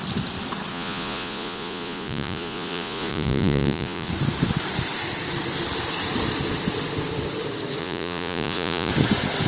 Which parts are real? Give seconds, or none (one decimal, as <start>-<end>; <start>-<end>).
0.0-0.7; 4.1-7.8; 8.9-9.5